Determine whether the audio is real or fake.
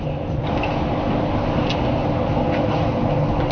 real